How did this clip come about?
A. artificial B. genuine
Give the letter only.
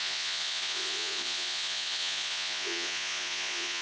A